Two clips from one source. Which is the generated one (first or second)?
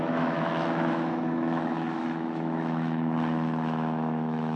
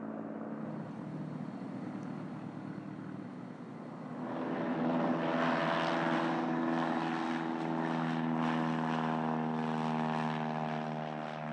first